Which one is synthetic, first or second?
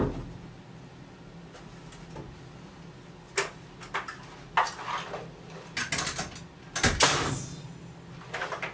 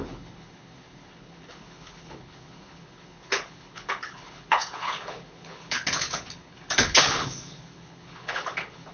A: second